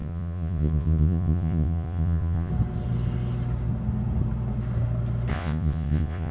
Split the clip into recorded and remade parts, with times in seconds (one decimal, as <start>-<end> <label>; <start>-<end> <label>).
0.0-2.5 remade; 2.5-5.3 recorded; 5.3-6.3 remade